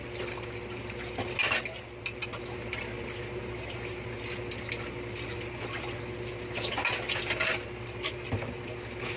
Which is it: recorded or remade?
recorded